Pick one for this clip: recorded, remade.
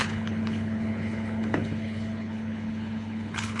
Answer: remade